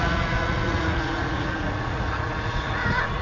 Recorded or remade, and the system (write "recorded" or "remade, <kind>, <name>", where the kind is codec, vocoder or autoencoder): remade, vocoder, Vocos